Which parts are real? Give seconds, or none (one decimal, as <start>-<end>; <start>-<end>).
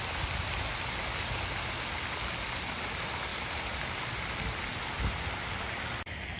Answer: 0.0-3.3; 4.2-6.4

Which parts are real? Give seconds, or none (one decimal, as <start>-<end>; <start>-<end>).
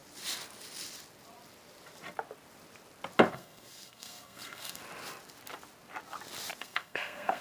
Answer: 0.0-3.3; 4.8-6.6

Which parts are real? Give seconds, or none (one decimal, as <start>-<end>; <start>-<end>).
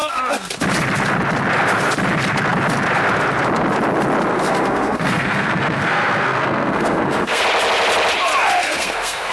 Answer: 0.6-4.3; 7.4-8.6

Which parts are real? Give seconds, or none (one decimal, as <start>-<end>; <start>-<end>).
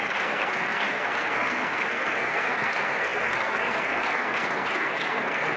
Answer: none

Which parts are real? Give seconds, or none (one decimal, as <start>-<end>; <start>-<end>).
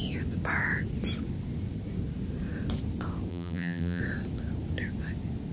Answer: 0.0-3.3; 4.0-5.5